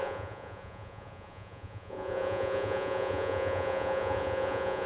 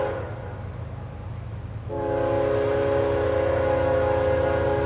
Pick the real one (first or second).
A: second